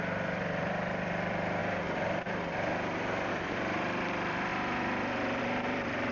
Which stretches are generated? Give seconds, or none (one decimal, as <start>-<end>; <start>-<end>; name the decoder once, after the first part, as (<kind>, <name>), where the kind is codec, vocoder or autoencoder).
0.0-1.6 (vocoder, BigVGAN v2); 3.3-4.5; 5.4-6.1